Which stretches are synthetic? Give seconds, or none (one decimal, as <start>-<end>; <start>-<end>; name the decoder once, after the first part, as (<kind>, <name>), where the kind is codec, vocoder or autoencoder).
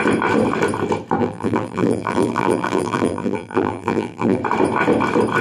1.2-4.4 (vocoder, BigVGAN v2)